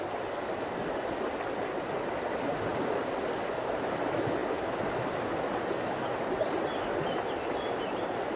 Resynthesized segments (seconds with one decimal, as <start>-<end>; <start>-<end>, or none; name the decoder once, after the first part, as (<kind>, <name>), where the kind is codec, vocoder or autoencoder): none